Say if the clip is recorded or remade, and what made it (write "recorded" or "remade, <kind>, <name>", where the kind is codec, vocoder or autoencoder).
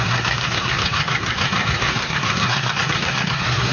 remade, codec, SNAC